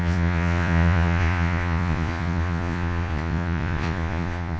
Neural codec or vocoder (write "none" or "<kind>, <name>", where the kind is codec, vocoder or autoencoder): vocoder, Vocos